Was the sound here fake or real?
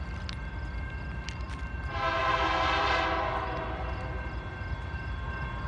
real